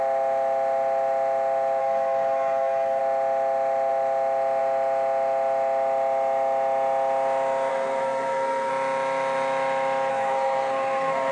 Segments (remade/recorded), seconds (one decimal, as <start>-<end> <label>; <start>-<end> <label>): 0.0-1.8 recorded; 1.8-3.0 remade; 3.0-7.7 recorded; 7.7-8.7 remade; 8.7-10.1 recorded; 10.1-11.3 remade